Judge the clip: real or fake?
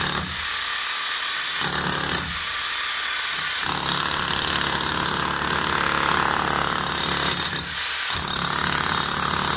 real